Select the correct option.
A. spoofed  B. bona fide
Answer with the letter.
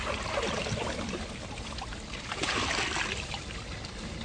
B